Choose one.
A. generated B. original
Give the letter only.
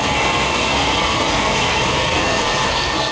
A